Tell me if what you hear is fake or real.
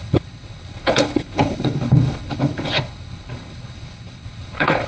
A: fake